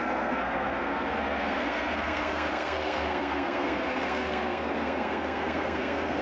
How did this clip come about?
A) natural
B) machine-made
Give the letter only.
B